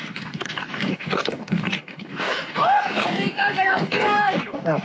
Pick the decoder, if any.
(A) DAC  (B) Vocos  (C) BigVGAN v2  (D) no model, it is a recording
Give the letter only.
A